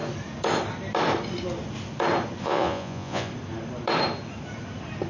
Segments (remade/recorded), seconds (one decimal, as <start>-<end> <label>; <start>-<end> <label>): 0.0-2.4 recorded; 2.4-3.3 remade; 3.3-5.1 recorded